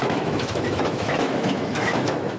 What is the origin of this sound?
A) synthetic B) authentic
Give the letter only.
A